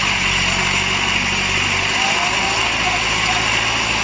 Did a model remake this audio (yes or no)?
no